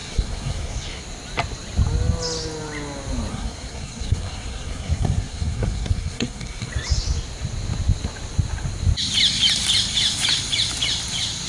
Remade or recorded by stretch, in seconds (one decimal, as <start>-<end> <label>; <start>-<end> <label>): 0.0-1.0 remade; 1.0-3.3 recorded; 3.3-6.7 remade; 6.7-11.5 recorded